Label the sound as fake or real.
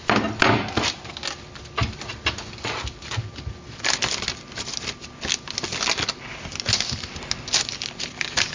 real